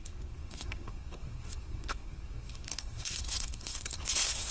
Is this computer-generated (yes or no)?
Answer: yes